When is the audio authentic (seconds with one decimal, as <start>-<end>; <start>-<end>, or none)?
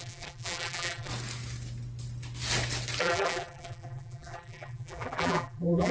1.1-3.0